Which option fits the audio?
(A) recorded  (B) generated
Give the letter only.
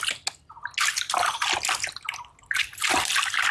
A